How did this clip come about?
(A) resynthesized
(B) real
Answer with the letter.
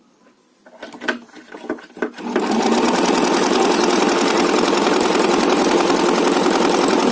B